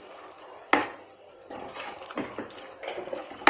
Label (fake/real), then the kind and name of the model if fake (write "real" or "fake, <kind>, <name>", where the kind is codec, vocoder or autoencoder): fake, vocoder, BigVGAN v2